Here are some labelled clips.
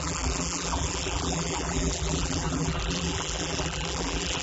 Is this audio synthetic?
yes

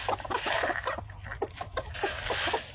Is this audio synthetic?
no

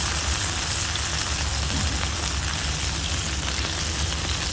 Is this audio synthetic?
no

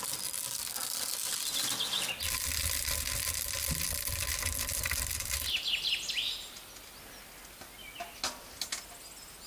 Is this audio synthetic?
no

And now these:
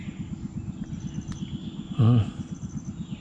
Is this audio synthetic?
no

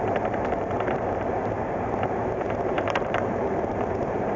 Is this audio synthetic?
yes